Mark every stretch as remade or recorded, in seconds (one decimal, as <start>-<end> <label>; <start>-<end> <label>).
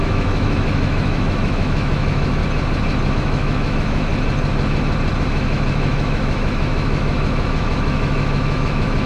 0.0-2.4 remade; 2.4-3.1 recorded; 3.1-4.1 remade; 4.1-5.2 recorded; 5.2-9.1 remade